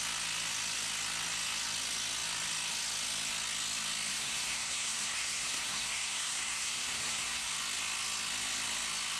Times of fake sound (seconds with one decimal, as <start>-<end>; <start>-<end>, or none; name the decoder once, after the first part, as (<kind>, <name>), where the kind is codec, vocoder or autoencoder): 4.1-7.5 (codec, SNAC)